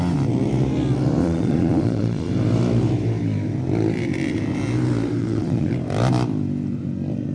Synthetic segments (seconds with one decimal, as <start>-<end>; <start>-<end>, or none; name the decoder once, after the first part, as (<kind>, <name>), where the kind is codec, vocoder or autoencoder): 1.2-2.3 (vocoder, Vocos); 5.2-5.7